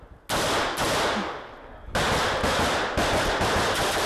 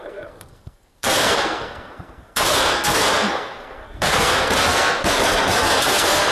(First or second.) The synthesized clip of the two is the second